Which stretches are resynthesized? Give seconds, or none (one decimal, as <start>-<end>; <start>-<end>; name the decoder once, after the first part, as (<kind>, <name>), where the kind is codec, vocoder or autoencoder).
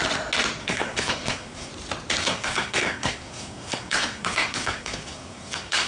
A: 0.6-1.7 (codec, SNAC); 2.2-5.9